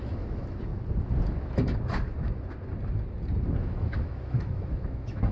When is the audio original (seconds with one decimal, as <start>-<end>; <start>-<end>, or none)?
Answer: 0.7-3.6